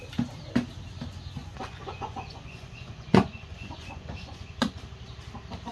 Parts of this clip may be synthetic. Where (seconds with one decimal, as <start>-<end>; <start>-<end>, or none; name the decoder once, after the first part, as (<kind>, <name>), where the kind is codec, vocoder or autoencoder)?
1.4-4.8 (vocoder, Vocos)